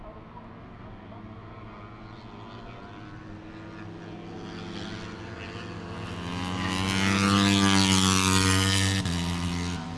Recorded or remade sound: recorded